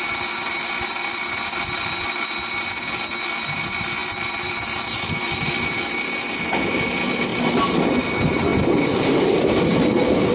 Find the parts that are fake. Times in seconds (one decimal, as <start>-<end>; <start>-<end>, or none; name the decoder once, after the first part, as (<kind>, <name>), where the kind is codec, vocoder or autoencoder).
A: 4.0-5.7 (vocoder, BigVGAN v2); 8.5-10.3